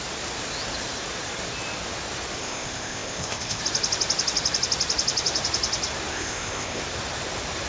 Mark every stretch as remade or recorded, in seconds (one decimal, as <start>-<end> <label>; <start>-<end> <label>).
0.0-2.4 recorded; 2.4-3.6 remade; 3.6-6.1 recorded; 6.1-6.8 remade; 6.8-7.7 recorded